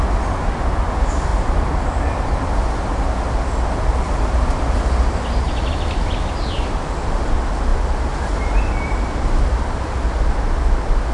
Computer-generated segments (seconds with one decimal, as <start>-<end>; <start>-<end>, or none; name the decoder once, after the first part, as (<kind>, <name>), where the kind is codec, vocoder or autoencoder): none